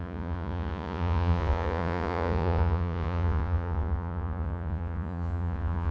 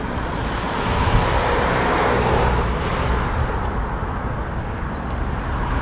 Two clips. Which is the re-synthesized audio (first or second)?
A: first